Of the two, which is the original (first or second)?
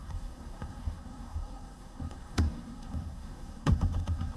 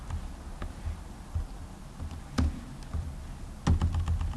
second